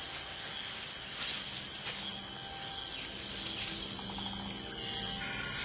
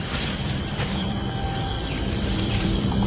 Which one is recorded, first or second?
first